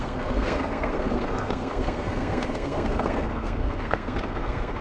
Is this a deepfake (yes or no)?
yes